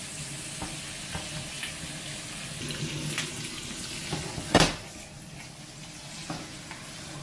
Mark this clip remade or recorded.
recorded